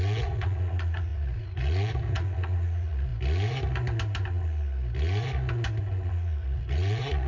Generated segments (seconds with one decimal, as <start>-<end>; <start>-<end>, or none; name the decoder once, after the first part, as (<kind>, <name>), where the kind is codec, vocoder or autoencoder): 0.0-3.1 (vocoder, Vocos); 6.1-7.3